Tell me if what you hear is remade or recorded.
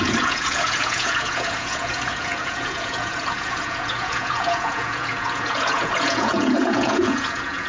remade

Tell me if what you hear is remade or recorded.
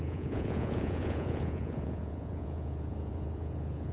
remade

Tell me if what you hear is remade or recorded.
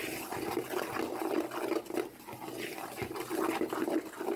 recorded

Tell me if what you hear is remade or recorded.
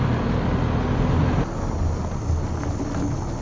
recorded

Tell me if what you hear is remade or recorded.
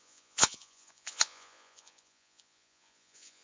remade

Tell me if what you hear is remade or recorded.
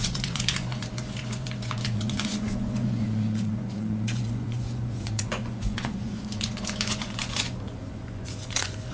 remade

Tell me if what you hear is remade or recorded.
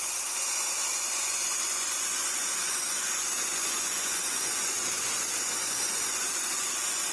remade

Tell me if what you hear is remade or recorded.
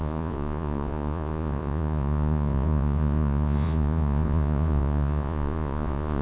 remade